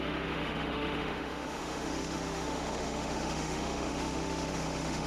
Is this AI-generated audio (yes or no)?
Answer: yes